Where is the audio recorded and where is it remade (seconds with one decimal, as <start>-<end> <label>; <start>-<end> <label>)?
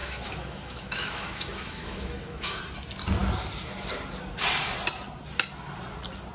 0.0-2.5 remade; 2.5-6.3 recorded